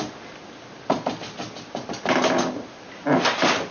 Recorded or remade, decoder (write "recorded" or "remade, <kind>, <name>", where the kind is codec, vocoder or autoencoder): recorded